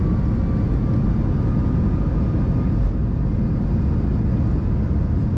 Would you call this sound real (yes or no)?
yes